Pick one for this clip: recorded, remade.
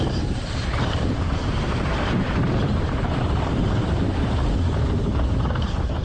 remade